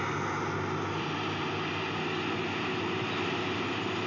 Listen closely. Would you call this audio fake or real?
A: real